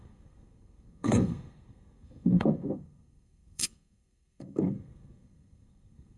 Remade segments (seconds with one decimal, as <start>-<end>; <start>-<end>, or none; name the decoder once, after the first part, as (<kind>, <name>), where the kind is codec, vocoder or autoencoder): 0.0-6.2 (codec, SNAC)